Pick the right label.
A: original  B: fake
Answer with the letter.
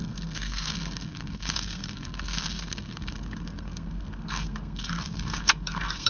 B